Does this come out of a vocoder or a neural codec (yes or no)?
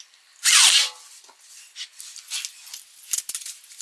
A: no